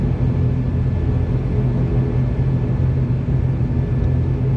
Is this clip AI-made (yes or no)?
no